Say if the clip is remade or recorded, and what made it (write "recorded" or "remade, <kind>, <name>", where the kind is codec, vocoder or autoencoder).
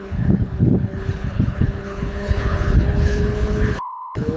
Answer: remade, codec, HILCodec